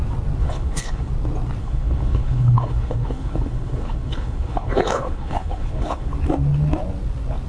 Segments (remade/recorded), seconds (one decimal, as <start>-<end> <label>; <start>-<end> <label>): 0.0-0.4 recorded; 0.4-1.1 remade; 1.1-1.6 recorded; 1.6-6.1 remade; 6.1-7.5 recorded